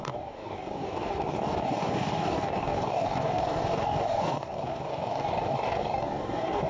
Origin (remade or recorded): remade